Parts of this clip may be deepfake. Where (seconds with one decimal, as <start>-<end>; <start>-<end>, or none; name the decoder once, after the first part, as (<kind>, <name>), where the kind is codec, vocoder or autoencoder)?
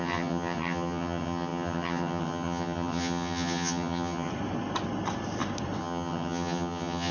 0.0-4.3 (vocoder, HiFi-GAN); 5.8-7.1